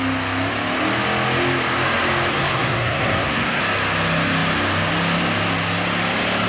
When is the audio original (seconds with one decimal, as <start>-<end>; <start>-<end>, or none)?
0.0-2.3; 3.6-6.5